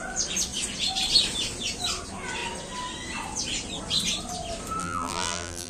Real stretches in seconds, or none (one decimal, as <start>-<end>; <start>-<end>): 0.0-4.8